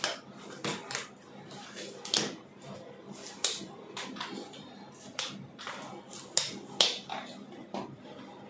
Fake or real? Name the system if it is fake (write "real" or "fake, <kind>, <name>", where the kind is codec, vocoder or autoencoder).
real